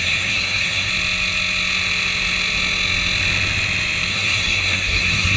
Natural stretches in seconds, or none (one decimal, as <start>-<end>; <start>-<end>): 0.9-4.1